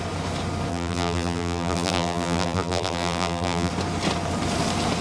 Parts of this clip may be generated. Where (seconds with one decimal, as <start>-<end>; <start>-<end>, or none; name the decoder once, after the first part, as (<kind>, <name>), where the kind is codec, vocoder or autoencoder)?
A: 0.7-3.7 (vocoder, BigVGAN v2)